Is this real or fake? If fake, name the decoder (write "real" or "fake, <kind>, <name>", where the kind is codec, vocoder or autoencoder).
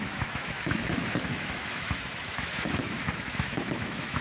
fake, autoencoder, DAC-VAE